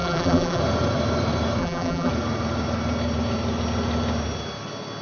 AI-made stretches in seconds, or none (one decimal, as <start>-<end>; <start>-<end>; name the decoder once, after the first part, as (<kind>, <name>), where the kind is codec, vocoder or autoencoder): 0.0-0.6 (vocoder, BigVGAN v2); 1.6-2.1